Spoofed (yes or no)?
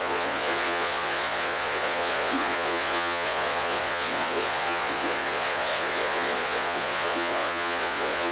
yes